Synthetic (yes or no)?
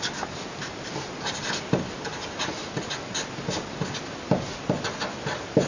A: no